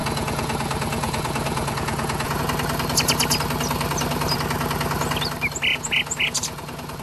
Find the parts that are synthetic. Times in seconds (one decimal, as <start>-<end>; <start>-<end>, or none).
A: 0.0-2.4; 5.7-7.0

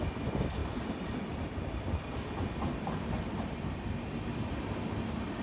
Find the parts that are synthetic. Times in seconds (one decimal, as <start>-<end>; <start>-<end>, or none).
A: none

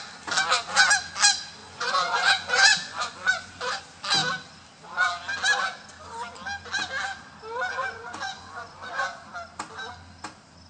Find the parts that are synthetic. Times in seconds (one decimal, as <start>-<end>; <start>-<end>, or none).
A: 1.6-3.8; 7.8-9.0

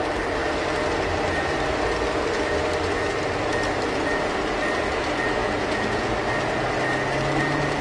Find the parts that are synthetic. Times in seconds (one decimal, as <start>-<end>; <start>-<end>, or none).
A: 5.4-6.1

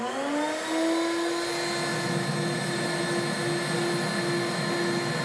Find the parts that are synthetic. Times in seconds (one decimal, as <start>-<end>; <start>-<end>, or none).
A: none

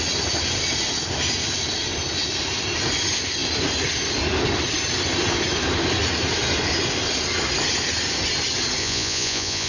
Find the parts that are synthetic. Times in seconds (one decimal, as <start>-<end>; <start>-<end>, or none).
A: 8.8-9.7

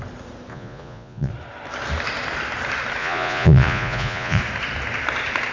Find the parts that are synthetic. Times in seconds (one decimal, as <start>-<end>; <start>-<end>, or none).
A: 0.5-1.3; 3.0-4.4